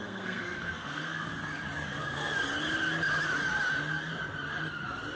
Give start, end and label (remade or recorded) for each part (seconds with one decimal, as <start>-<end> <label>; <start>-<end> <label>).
0.0-1.3 remade; 1.3-2.0 recorded; 2.0-2.4 remade; 2.4-5.2 recorded